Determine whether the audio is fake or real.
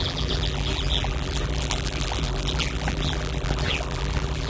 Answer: fake